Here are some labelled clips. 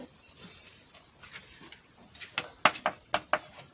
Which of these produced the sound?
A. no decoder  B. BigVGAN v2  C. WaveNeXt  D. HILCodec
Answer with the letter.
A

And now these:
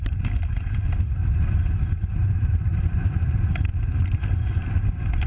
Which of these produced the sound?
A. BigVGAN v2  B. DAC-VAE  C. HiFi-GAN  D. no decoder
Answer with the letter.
A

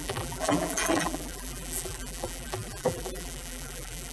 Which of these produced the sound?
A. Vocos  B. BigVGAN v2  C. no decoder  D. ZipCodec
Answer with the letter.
B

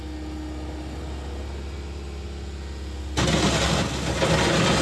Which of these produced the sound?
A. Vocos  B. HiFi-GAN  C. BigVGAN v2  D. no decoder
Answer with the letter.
D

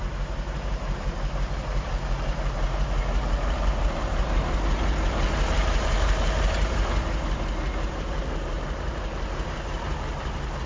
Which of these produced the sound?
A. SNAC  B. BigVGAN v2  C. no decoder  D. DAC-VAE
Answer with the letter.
B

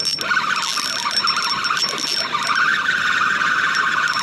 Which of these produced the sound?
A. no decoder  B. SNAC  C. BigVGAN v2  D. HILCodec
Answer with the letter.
A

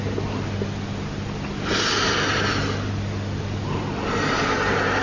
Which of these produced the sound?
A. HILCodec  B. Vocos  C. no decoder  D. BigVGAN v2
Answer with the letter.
C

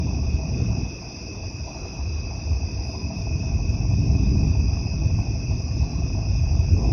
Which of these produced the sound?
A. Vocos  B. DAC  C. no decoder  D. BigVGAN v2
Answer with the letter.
C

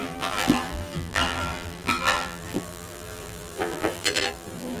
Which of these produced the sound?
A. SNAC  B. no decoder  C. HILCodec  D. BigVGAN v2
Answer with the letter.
D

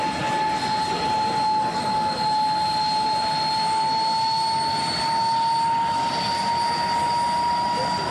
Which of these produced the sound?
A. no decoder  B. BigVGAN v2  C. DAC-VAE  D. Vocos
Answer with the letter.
A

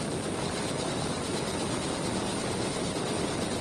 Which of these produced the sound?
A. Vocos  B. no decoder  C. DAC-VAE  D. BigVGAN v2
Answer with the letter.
B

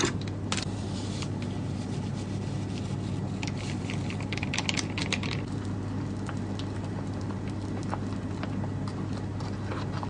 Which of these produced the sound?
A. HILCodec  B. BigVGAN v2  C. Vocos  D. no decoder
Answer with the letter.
D